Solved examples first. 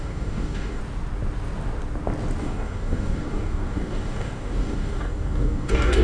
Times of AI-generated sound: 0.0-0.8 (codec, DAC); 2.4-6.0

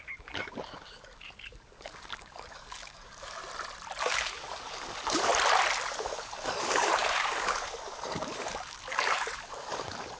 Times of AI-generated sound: 0.0-3.4 (codec, DAC); 4.0-5.3; 6.0-10.2

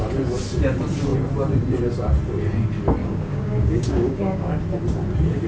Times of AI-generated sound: 3.0-4.5 (codec, DAC)

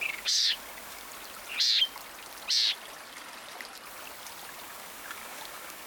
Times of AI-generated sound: 0.0-1.1 (codec, DAC); 4.6-5.9

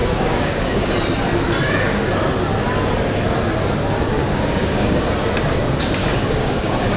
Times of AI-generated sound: 0.0-0.9 (codec, DAC); 4.2-5.0; 6.0-7.0

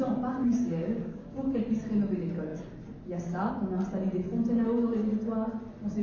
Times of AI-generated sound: 0.4-1.6 (codec, DAC)

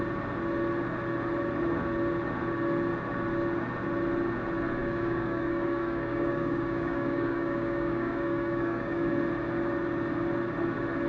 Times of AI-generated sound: 4.8-9.1 (codec, DAC)